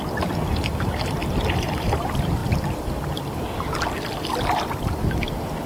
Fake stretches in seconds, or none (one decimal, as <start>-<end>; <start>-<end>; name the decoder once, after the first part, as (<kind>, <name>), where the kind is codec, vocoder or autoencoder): none